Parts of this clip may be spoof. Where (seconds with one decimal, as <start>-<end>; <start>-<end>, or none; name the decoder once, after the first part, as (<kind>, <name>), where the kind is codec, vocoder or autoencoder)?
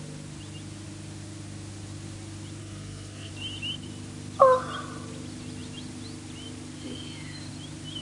2.6-3.3 (codec, SNAC)